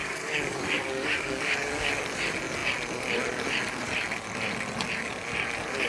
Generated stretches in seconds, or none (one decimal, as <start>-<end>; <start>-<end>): 0.0-1.9